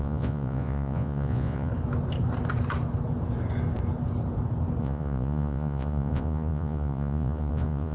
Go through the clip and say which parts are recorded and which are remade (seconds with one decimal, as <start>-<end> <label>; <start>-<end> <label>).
0.0-1.7 remade; 1.7-4.8 recorded; 4.8-7.9 remade